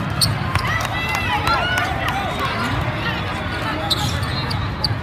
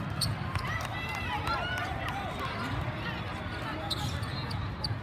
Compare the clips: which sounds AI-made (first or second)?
second